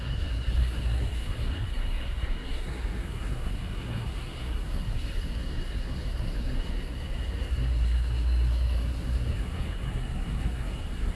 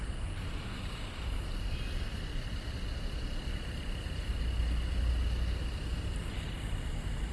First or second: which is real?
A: second